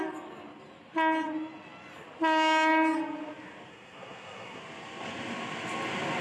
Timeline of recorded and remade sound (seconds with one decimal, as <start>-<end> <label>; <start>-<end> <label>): 0.0-3.7 recorded; 3.7-4.6 remade; 4.6-6.2 recorded